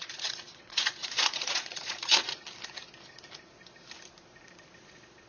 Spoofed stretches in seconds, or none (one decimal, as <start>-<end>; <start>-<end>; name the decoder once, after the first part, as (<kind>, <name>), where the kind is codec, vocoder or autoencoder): 0.0-2.4 (vocoder, Vocos); 4.8-5.3

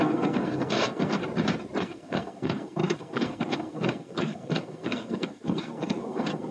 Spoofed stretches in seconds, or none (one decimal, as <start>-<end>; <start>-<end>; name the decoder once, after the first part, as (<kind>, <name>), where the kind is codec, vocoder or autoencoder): 0.0-1.2 (codec, SNAC); 1.8-6.5

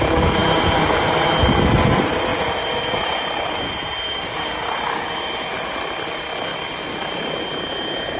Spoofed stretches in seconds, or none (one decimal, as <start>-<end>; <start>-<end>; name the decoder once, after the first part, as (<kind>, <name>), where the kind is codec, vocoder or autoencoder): none

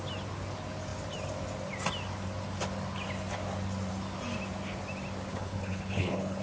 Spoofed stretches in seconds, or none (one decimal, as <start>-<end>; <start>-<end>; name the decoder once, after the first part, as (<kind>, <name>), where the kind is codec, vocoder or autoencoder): 5.3-6.4 (codec, HILCodec)